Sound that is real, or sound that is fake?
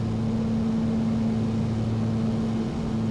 real